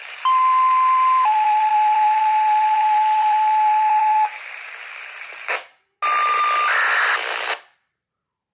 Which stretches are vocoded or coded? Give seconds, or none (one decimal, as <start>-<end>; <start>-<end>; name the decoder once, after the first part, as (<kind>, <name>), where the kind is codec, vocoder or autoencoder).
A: 0.0-5.7 (vocoder, BigVGAN v2); 7.6-8.5